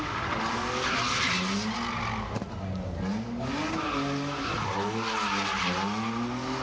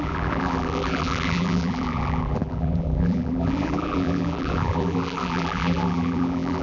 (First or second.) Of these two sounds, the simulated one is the second